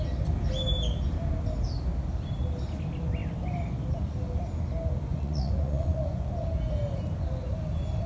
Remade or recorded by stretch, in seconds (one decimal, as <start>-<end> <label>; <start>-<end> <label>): 0.0-5.1 recorded; 5.1-6.3 remade; 6.3-8.1 recorded